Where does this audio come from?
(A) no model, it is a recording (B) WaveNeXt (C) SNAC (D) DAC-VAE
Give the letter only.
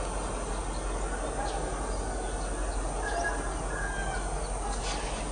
A